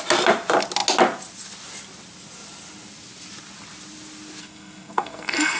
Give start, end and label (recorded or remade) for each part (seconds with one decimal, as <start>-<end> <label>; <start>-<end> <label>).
0.0-4.4 recorded; 4.4-5.6 remade